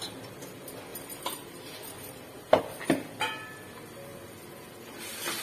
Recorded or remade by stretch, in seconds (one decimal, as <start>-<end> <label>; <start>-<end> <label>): 0.0-0.9 recorded; 0.9-2.6 remade; 2.6-4.1 recorded; 4.1-5.4 remade